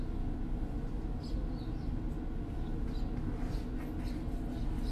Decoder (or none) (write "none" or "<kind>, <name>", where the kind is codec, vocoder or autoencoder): none